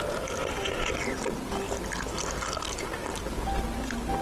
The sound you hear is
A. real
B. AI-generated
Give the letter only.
A